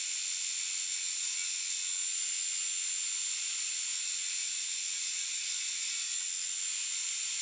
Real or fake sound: real